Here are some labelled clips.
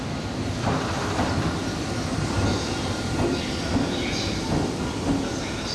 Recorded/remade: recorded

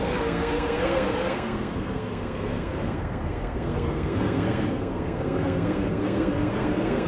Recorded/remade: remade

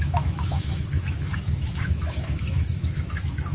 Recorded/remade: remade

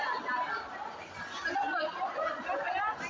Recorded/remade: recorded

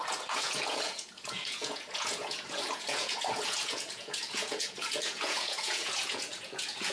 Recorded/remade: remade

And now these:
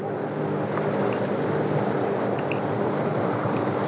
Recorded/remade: recorded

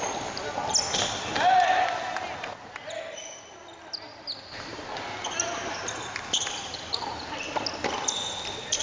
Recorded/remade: recorded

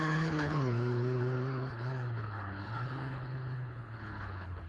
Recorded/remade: remade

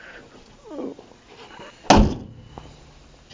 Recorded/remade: recorded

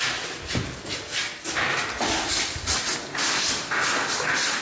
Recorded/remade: recorded